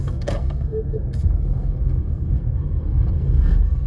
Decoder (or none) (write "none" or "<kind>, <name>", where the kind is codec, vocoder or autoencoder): codec, SNAC